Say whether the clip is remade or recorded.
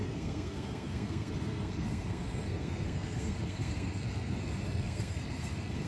remade